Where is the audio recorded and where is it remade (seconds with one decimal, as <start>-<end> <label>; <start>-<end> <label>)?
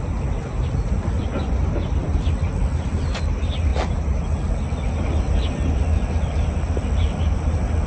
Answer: 0.0-7.9 recorded